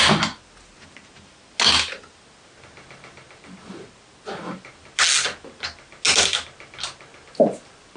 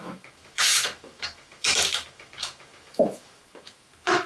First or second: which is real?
first